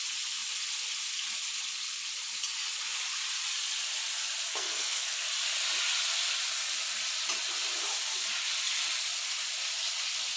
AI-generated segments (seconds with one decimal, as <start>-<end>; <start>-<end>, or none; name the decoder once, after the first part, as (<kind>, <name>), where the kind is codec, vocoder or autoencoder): 4.5-5.3 (codec, SNAC)